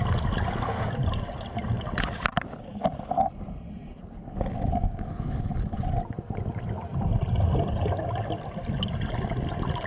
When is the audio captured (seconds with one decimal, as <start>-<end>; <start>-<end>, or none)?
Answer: 0.0-9.9